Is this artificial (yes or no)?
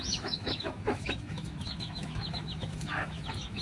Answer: yes